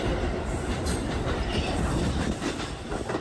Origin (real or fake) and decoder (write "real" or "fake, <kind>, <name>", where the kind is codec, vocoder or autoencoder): fake, vocoder, BigVGAN v2